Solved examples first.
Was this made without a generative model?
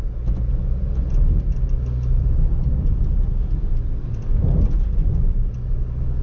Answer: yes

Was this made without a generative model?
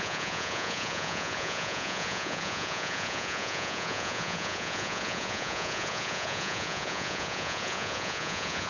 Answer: no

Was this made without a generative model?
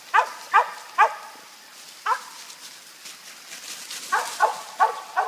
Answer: yes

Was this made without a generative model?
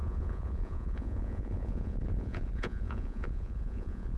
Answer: no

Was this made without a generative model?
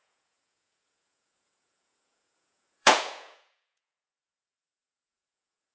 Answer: no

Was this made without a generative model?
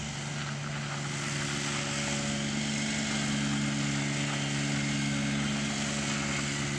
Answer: yes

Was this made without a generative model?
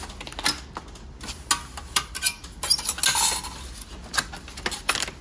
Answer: yes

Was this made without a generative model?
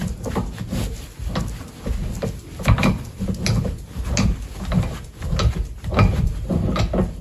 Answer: yes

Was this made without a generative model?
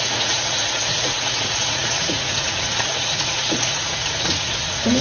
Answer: no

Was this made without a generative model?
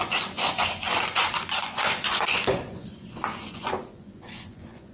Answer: no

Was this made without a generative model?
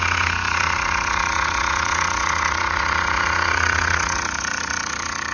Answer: no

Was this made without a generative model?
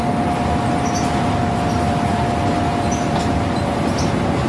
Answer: yes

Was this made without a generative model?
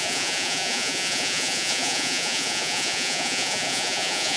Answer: no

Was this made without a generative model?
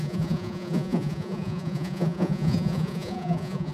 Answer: no